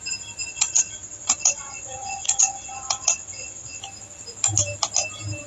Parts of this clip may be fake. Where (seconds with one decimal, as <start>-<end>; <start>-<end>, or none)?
0.5-3.8